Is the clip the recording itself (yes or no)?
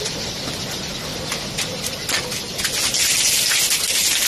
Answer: yes